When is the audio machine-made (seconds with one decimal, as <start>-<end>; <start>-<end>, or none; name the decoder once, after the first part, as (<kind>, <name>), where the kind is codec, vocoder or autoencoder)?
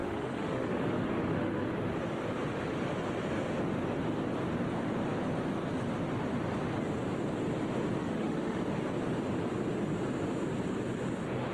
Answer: 0.0-1.7 (autoencoder, DAC-VAE); 8.0-8.6